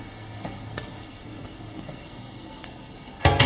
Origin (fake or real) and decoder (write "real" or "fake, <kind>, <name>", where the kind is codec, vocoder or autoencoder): fake, codec, SNAC